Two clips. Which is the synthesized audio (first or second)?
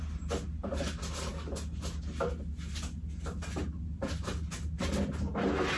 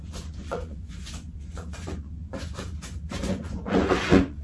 second